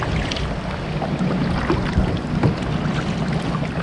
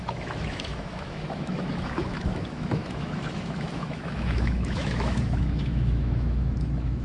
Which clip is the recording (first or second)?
first